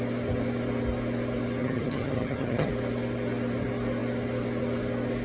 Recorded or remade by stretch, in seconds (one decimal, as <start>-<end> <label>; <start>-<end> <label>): 0.0-1.6 recorded; 1.6-2.7 remade; 2.7-5.2 recorded